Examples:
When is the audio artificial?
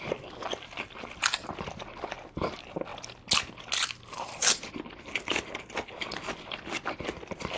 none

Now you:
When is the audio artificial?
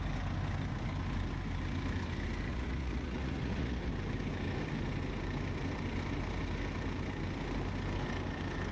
2.5-3.9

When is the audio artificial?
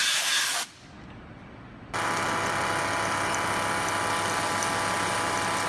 none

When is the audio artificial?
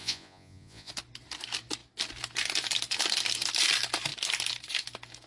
0.0-0.9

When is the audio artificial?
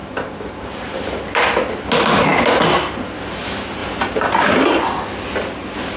none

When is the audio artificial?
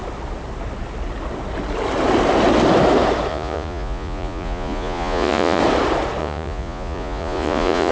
3.3-5.6; 6.2-7.9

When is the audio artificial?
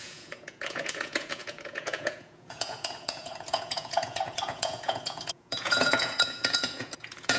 0.0-7.4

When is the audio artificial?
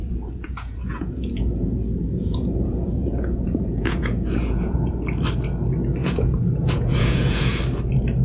0.0-4.9; 6.0-7.6